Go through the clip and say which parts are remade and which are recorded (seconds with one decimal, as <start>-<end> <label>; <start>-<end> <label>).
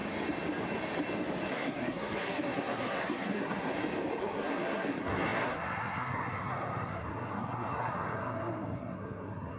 0.0-1.5 recorded; 1.5-3.7 remade; 3.7-4.2 recorded; 4.2-9.6 remade